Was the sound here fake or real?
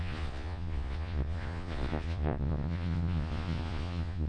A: fake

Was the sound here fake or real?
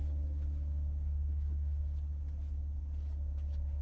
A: real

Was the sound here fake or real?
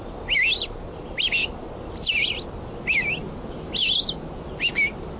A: real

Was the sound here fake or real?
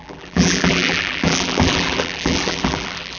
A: fake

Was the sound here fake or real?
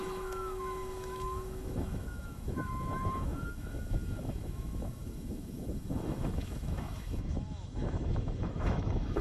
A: fake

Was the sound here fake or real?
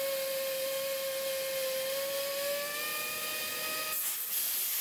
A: real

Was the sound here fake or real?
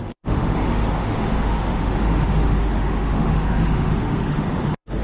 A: fake